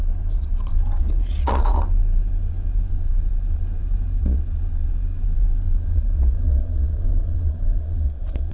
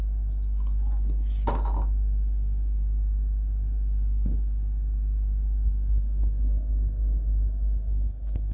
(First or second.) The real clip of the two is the second